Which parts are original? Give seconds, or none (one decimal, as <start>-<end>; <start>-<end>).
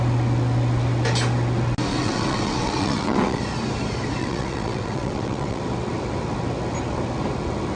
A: 0.0-1.9; 3.4-4.2; 5.6-7.8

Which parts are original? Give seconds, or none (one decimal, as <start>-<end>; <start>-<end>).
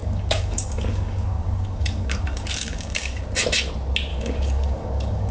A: 3.2-4.1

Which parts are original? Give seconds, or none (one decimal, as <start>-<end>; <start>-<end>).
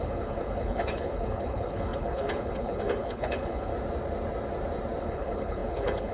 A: 3.7-5.0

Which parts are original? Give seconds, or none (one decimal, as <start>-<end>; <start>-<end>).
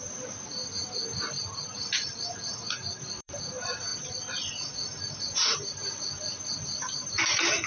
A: 2.5-3.0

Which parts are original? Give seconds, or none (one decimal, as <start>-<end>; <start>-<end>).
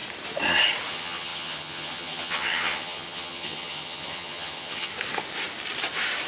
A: 0.0-0.9; 4.9-6.3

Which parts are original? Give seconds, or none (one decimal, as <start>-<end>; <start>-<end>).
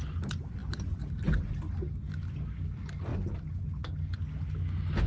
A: 0.0-0.6; 1.3-5.1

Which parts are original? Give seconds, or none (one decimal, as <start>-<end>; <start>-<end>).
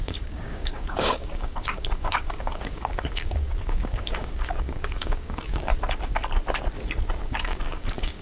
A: 5.7-7.2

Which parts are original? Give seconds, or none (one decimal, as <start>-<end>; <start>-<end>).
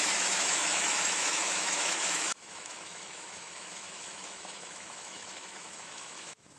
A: none